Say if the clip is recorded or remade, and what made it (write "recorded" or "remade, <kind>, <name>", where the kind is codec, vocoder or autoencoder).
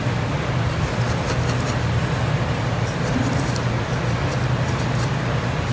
recorded